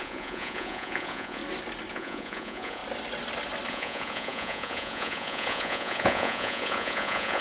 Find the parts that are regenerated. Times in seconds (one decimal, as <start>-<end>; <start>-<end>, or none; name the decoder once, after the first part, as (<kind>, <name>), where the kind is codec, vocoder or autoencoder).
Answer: 0.0-1.4 (vocoder, Vocos); 1.9-2.8; 3.7-7.4